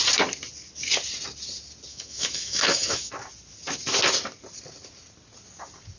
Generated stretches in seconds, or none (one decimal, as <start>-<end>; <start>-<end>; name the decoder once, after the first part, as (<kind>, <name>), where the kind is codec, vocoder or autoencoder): 1.9-3.1 (autoencoder, DAC-VAE)